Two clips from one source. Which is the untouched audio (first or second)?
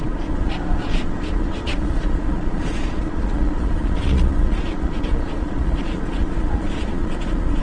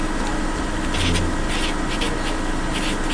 second